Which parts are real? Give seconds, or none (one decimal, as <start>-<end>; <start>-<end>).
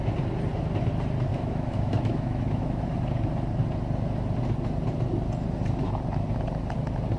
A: 0.0-1.3; 2.8-7.2